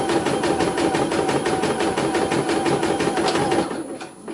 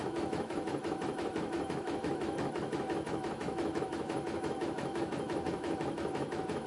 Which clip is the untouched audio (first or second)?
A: first